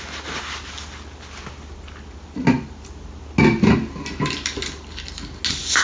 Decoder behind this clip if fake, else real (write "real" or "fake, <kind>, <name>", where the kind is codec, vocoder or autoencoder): real